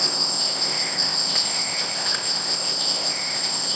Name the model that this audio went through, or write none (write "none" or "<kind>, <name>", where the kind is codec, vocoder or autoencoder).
codec, ZipCodec